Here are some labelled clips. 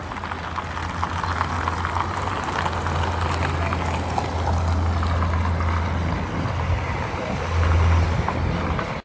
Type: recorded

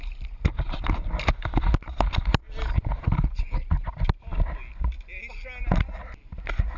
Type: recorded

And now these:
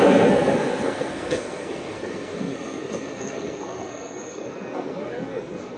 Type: remade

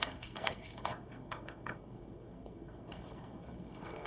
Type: remade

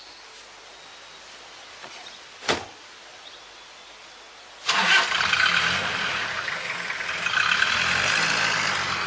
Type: recorded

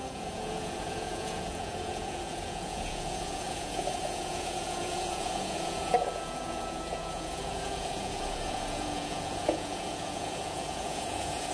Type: remade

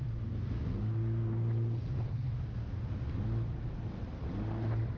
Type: recorded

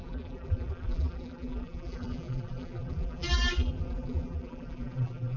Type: remade